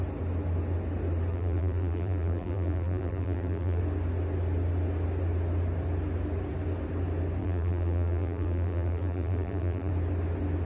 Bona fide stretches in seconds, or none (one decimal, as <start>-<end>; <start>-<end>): 0.0-1.3; 3.8-7.4; 9.9-10.6